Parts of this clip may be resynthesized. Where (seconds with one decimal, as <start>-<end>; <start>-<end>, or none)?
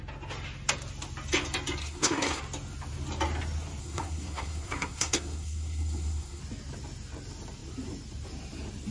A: 1.8-2.4; 3.8-6.4